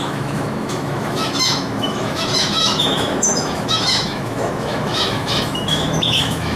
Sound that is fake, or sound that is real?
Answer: fake